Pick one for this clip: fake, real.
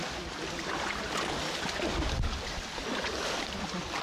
real